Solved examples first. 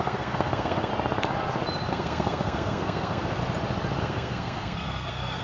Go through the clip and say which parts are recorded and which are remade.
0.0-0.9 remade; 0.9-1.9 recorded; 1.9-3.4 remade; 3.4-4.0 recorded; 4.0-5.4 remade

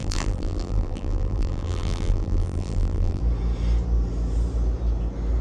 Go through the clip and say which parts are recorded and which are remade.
0.0-3.2 remade; 3.2-5.4 recorded

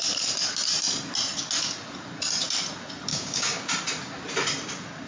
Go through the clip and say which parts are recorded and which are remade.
0.0-3.1 recorded; 3.1-3.7 remade; 3.7-5.1 recorded